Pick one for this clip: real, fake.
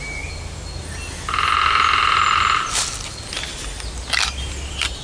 real